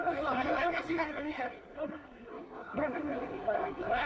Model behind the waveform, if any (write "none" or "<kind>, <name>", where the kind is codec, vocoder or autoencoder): codec, SNAC